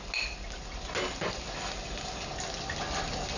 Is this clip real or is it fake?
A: real